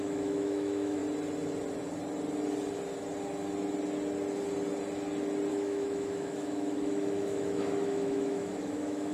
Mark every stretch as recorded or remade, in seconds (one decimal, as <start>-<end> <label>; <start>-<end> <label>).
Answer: 0.0-1.0 remade; 1.0-5.5 recorded; 5.5-9.1 remade